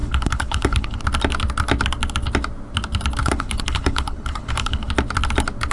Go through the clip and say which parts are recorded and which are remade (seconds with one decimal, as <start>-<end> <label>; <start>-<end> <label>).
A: 0.0-1.0 remade; 1.0-3.2 recorded; 3.2-4.9 remade; 4.9-5.7 recorded

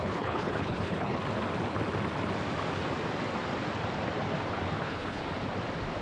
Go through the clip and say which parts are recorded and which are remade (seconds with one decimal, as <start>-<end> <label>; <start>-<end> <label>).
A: 0.0-1.2 remade; 1.2-4.8 recorded; 4.8-5.2 remade; 5.2-6.0 recorded

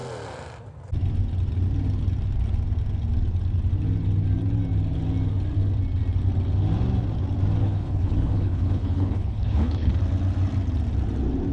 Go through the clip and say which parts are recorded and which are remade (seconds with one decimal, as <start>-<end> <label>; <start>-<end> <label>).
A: 0.0-7.6 recorded; 7.6-9.9 remade; 9.9-11.5 recorded

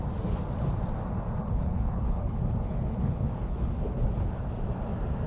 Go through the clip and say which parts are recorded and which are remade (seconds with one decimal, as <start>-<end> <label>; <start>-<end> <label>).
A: 0.0-1.4 recorded; 1.4-4.5 remade; 4.5-5.3 recorded

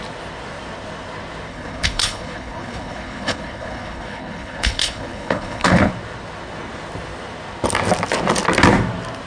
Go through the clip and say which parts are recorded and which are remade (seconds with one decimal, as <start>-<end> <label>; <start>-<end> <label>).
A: 0.0-1.5 recorded; 1.5-5.9 remade; 5.9-9.3 recorded

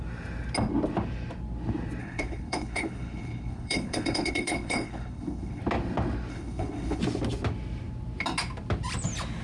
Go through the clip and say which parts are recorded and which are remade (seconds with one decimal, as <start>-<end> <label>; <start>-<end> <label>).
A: 0.0-2.0 recorded; 2.0-5.6 remade; 5.6-6.3 recorded; 6.3-7.0 remade; 7.0-9.4 recorded

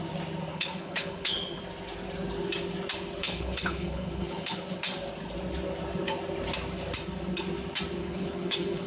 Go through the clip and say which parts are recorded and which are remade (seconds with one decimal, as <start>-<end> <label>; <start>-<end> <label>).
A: 0.0-0.5 recorded; 0.5-1.6 remade; 1.6-3.2 recorded; 3.2-4.6 remade; 4.6-8.0 recorded; 8.0-8.9 remade

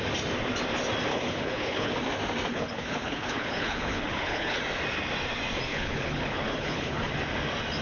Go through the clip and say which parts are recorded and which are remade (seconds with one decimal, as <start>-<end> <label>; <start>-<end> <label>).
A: 0.0-1.1 recorded; 1.1-1.9 remade; 1.9-2.5 recorded; 2.5-4.6 remade; 4.6-5.7 recorded; 5.7-7.1 remade; 7.1-7.8 recorded